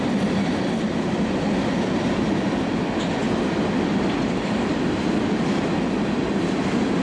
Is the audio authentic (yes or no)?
yes